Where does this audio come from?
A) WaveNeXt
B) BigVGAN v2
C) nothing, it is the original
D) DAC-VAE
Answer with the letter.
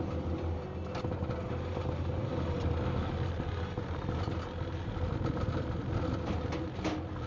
C